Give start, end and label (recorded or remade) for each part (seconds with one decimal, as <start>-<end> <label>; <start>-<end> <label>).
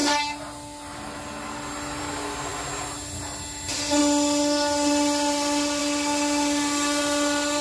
0.0-7.6 recorded